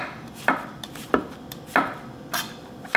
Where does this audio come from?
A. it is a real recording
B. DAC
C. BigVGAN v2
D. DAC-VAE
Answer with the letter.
C